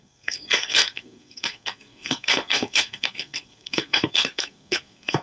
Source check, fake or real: fake